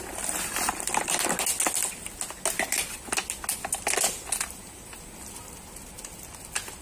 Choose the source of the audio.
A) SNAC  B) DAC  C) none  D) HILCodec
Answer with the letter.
C